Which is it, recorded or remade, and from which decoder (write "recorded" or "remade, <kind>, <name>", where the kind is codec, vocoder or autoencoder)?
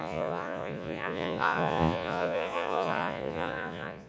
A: remade, vocoder, Vocos